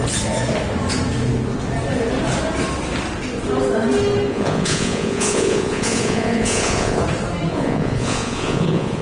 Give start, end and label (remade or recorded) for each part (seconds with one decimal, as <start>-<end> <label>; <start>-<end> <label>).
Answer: 0.0-4.3 recorded; 4.3-7.0 remade; 7.0-7.5 recorded; 7.5-9.0 remade